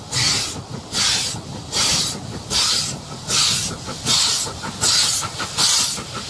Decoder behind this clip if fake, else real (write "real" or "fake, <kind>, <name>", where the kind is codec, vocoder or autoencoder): real